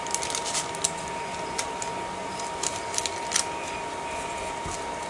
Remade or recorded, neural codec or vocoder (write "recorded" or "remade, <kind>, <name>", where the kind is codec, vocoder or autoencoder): recorded